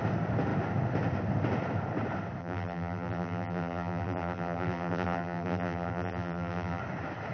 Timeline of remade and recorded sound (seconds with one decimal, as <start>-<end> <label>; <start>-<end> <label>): 0.0-2.4 recorded; 2.4-6.8 remade; 6.8-7.3 recorded